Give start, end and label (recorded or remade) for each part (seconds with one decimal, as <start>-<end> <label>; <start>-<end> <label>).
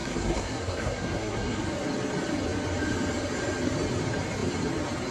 0.0-1.6 remade; 1.6-5.1 recorded